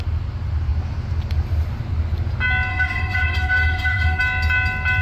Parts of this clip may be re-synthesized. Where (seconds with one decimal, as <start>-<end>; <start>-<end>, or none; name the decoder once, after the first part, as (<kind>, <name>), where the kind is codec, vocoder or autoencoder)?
2.7-4.2 (autoencoder, DAC-VAE)

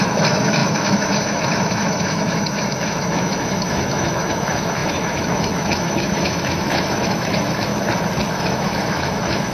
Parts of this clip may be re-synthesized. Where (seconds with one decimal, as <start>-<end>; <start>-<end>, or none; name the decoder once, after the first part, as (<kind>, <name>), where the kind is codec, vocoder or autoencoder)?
0.0-7.7 (autoencoder, DAC-VAE); 8.3-9.5

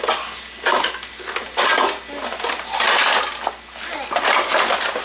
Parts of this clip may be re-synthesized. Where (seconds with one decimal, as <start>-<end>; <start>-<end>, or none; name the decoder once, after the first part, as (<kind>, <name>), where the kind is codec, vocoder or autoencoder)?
none

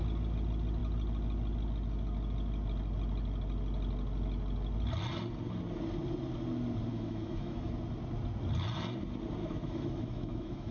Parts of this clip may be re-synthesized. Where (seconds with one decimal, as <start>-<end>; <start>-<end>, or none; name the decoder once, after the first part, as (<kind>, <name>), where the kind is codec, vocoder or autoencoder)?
6.9-7.7 (autoencoder, DAC-VAE); 9.4-10.7

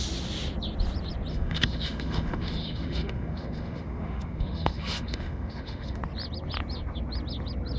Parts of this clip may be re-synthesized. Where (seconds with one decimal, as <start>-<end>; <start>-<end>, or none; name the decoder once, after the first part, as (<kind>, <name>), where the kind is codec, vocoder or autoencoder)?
1.3-6.0 (autoencoder, DAC-VAE)